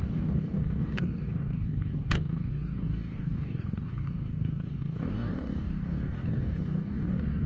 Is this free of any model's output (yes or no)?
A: no